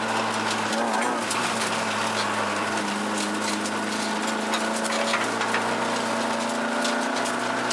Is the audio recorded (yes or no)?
yes